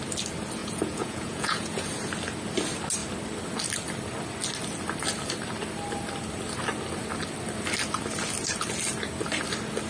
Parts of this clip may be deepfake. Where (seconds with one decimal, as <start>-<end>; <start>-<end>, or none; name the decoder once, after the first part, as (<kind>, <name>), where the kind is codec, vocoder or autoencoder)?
0.6-1.9 (vocoder, Vocos)